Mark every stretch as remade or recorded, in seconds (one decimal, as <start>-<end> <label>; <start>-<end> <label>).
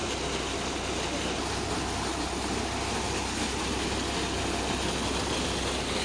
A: 0.0-6.0 recorded